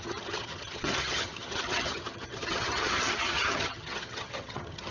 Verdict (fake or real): fake